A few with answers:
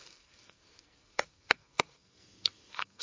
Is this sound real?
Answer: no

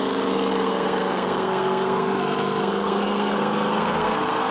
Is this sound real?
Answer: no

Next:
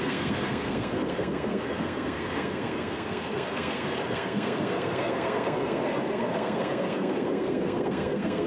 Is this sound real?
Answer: no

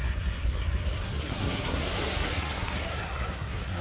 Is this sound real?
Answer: no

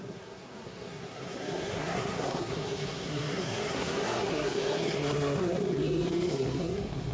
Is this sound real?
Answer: no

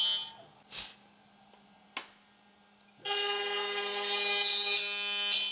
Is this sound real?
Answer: yes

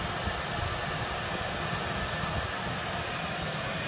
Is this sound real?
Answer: yes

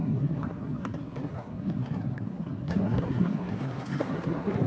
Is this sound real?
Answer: no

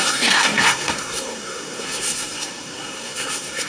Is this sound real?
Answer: no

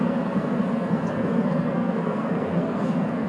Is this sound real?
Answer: no